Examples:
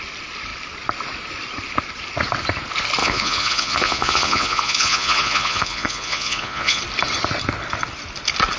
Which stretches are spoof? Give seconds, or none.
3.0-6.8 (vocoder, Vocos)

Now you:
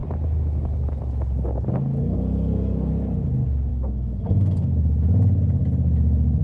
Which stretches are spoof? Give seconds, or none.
2.0-2.9 (codec, SNAC); 3.7-4.7

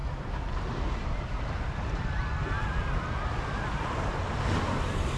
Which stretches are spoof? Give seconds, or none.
none

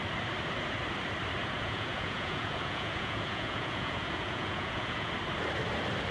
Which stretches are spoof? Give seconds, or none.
1.4-5.1 (vocoder, Vocos)

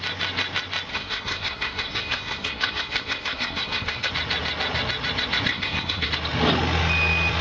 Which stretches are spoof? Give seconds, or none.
0.9-4.1 (codec, SNAC); 5.5-6.1

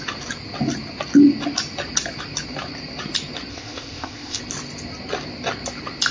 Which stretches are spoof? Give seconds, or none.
3.5-4.4 (codec, ZipCodec)